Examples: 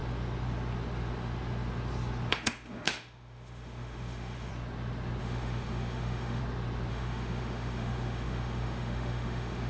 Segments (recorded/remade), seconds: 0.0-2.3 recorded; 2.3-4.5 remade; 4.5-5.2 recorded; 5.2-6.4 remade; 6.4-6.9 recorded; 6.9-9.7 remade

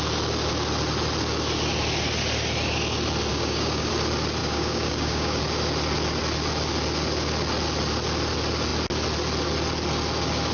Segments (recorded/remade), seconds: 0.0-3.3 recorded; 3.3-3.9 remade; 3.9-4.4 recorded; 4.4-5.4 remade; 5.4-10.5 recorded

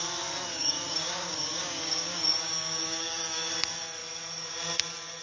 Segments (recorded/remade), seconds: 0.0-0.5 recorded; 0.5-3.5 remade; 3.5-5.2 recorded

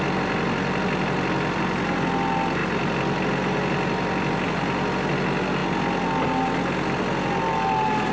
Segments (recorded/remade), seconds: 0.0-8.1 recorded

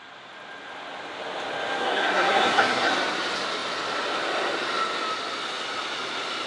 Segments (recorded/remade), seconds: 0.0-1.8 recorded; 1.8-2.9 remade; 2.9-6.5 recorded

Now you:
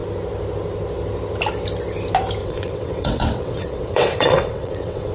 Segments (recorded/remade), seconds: 0.0-2.4 recorded; 2.4-5.1 remade